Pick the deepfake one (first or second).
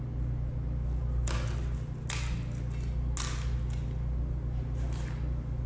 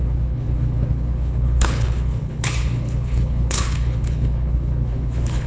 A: second